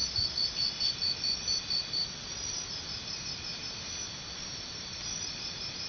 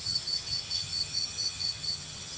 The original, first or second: first